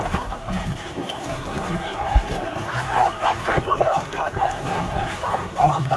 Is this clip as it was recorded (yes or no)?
no